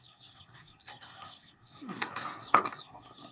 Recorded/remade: remade